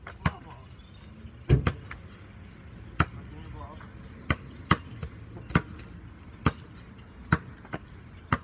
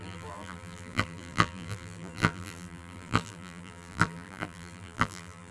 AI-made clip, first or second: second